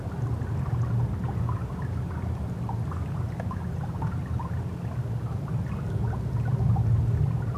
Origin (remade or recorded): recorded